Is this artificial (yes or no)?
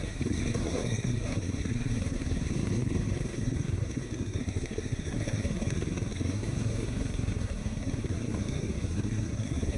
yes